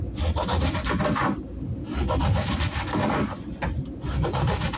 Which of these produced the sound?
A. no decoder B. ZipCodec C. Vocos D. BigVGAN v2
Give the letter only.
A